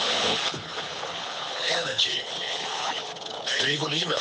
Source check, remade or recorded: remade